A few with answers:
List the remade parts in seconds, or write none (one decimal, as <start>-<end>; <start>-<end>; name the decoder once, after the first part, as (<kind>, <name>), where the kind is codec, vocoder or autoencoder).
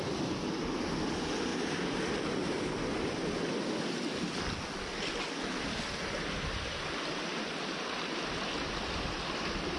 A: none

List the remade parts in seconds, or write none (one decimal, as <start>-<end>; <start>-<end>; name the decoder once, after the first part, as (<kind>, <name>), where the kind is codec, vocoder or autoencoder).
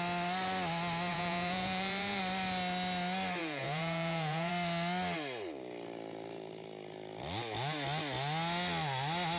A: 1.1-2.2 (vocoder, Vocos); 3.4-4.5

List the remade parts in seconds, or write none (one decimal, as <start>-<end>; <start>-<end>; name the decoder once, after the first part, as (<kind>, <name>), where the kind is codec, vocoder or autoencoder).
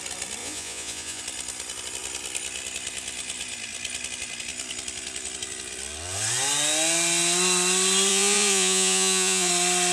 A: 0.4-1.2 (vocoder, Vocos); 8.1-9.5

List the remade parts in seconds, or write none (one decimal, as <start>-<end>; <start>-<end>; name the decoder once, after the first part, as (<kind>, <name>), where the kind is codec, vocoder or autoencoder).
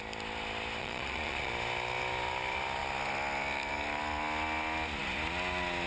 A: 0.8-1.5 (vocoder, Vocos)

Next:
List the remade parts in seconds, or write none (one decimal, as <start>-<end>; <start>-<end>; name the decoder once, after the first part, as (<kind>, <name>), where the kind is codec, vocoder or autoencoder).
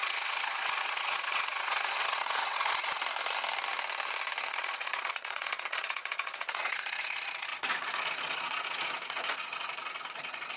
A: 0.0-3.0 (vocoder, Vocos); 4.5-10.6